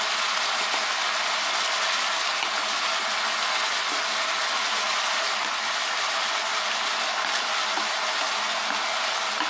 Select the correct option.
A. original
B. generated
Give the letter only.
A